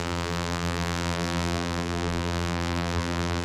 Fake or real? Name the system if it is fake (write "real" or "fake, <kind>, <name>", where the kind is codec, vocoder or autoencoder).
fake, vocoder, BigVGAN v2